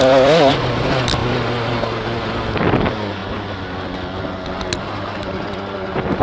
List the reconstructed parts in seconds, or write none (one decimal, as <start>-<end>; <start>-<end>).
0.0-1.2; 2.7-3.2; 5.2-6.2